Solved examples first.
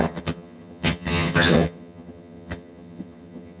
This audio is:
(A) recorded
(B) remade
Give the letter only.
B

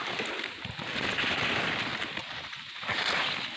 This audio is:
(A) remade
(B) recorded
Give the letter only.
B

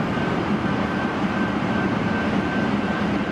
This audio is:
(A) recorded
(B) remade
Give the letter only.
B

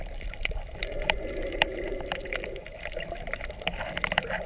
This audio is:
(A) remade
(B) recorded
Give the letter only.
A